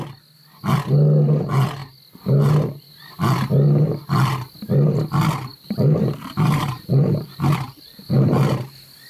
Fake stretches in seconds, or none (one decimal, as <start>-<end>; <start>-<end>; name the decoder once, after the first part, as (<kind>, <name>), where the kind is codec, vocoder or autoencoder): 5.5-8.3 (vocoder, BigVGAN v2)